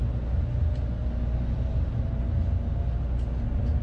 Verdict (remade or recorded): recorded